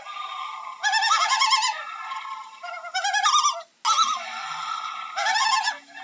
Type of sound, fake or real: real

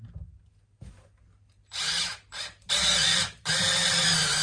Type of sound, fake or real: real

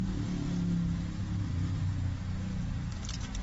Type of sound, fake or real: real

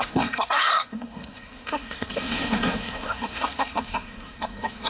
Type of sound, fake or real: fake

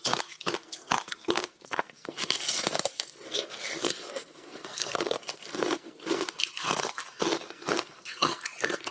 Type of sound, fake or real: fake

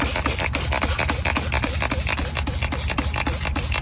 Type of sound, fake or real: real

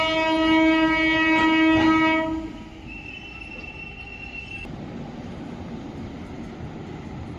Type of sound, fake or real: real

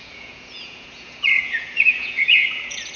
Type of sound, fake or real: fake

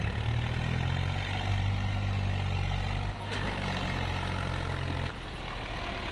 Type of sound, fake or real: real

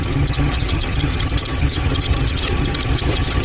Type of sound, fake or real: fake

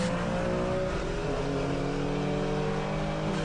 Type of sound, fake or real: real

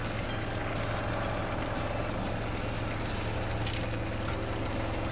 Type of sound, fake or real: real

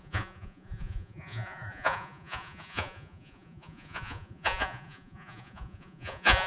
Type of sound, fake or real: fake